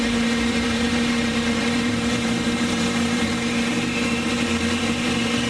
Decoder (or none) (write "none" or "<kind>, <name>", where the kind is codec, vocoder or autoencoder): vocoder, BigVGAN v2